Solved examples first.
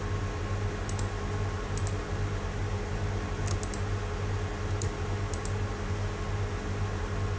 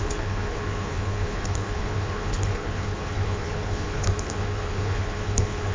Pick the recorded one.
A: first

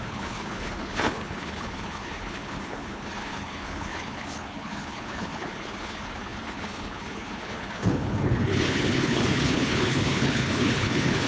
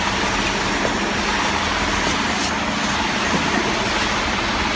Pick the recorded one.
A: second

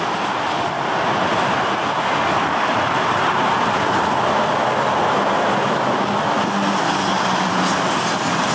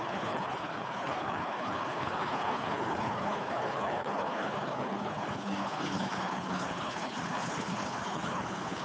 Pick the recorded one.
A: first